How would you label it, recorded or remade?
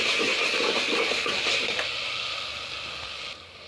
recorded